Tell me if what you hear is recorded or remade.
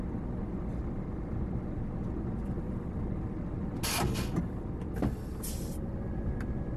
recorded